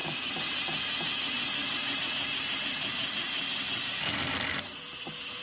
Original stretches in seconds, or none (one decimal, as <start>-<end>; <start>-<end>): 0.0-5.4